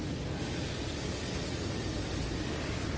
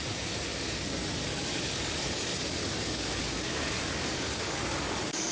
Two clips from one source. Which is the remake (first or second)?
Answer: second